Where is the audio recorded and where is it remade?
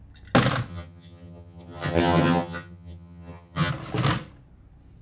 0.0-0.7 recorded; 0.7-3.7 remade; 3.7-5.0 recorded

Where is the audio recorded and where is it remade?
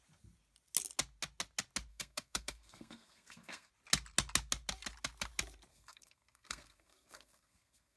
0.0-1.9 recorded; 1.9-3.7 remade; 3.7-5.7 recorded; 5.7-8.0 remade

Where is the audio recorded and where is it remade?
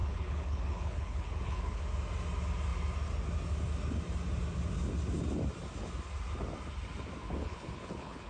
0.0-1.8 remade; 1.8-7.2 recorded; 7.2-8.3 remade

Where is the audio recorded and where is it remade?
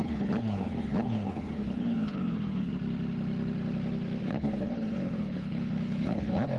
0.0-2.7 remade; 2.7-4.2 recorded; 4.2-6.6 remade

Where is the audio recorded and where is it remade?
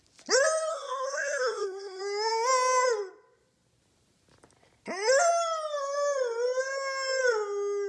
0.0-0.7 recorded; 0.7-2.0 remade; 2.0-7.9 recorded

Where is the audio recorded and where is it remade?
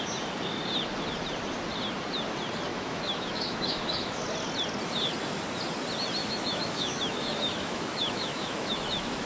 0.0-2.7 recorded; 2.7-4.2 remade; 4.2-6.2 recorded; 6.2-9.3 remade